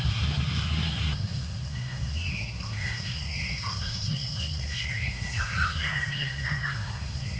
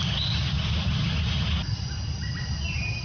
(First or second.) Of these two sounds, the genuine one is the second